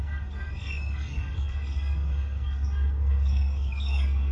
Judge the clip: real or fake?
fake